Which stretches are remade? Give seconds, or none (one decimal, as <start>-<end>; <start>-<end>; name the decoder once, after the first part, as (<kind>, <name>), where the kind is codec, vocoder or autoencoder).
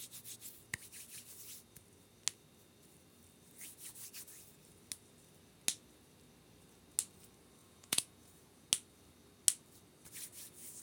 7.6-8.7 (vocoder, Vocos)